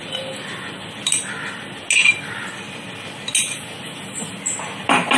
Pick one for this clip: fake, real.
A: real